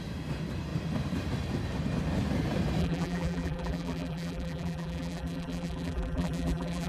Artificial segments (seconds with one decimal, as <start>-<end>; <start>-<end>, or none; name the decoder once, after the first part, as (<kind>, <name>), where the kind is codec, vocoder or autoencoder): 2.8-6.9 (vocoder, BigVGAN v2)